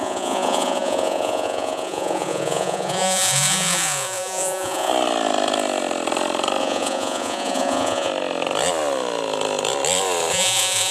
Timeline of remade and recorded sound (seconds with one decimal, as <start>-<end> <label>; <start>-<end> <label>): 0.0-4.9 remade; 4.9-6.6 recorded; 6.6-8.1 remade; 8.1-10.3 recorded; 10.3-10.9 remade